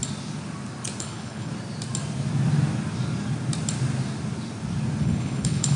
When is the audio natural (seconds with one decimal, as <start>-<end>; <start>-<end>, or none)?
0.0-1.0; 1.5-5.0